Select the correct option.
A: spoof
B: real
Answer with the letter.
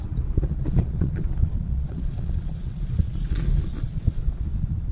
A